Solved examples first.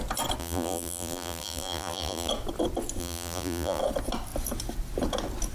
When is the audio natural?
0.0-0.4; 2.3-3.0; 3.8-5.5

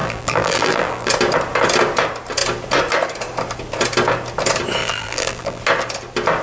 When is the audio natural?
1.1-4.8; 5.6-6.4

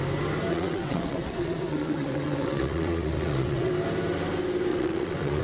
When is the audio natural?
0.0-0.5; 3.7-4.7